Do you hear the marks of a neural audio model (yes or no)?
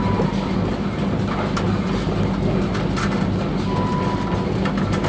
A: no